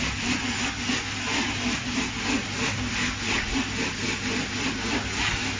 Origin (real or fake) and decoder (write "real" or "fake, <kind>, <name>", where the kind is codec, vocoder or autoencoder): real